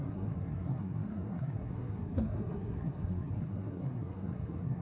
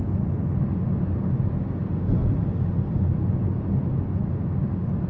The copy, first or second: first